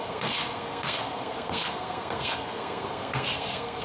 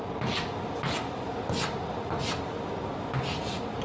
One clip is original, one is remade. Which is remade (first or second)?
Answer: first